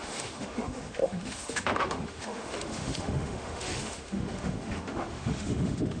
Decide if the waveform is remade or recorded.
remade